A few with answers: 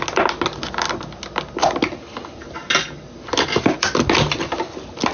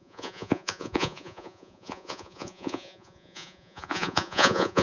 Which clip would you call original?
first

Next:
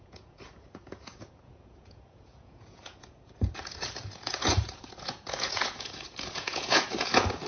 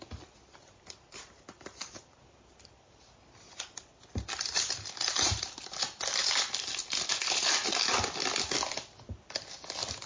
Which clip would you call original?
second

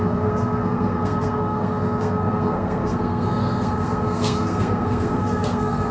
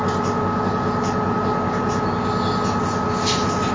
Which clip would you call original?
second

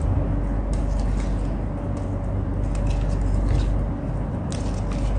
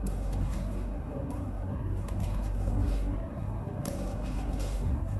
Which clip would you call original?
first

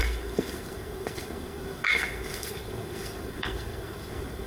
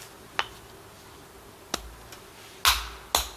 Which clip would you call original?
second